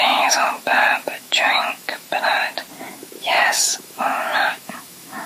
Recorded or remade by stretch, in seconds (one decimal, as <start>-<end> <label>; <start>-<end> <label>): 0.0-2.1 remade; 2.1-2.9 recorded; 2.9-5.3 remade